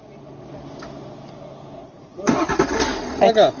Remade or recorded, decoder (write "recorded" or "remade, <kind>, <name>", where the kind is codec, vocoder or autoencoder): recorded